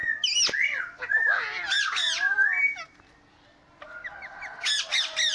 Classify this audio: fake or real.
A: real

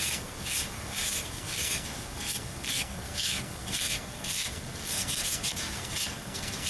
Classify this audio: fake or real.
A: fake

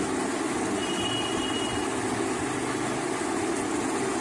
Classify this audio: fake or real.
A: real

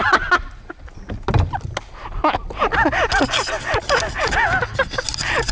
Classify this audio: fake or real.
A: real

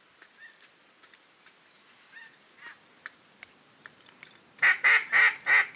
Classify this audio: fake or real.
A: real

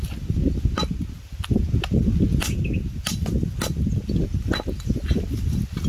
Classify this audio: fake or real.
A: real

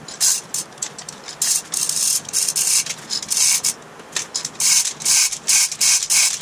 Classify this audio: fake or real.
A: real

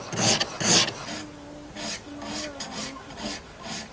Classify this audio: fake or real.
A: real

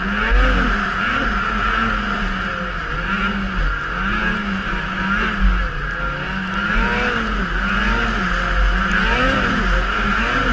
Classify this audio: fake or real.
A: real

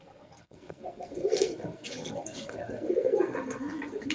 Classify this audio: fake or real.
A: fake